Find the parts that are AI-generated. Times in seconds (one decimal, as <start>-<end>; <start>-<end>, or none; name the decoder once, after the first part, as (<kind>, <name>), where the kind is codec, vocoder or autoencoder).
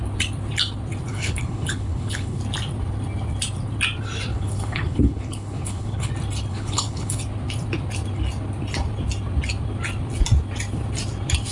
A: 1.1-2.4 (codec, HILCodec); 4.3-6.1; 6.5-7.2